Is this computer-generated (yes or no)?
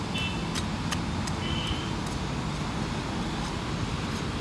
no